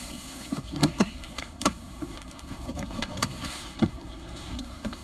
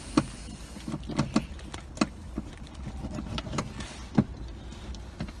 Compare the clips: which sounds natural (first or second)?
second